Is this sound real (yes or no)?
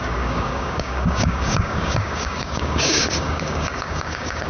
no